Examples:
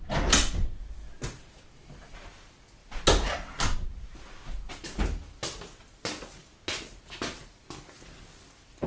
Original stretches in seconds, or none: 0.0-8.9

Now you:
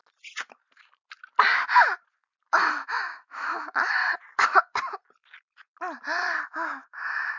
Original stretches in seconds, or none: 0.0-2.7; 4.0-6.4

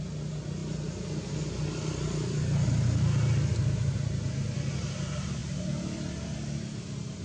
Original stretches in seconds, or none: 0.0-7.2

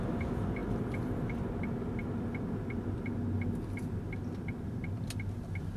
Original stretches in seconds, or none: 0.0-5.8